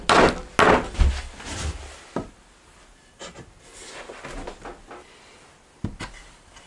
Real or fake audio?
real